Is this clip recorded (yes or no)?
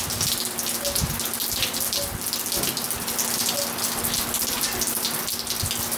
yes